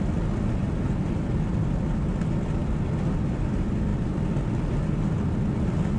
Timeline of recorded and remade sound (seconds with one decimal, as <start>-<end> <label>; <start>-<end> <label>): 0.0-6.0 recorded